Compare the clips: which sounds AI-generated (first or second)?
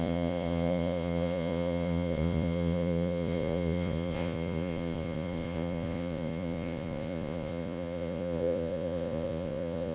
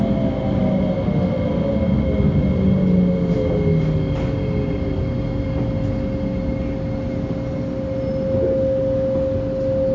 first